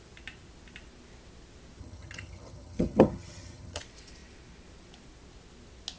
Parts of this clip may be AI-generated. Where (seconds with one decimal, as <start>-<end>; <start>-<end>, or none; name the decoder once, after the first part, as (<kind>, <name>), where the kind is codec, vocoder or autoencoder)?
1.8-3.8 (vocoder, HiFi-GAN)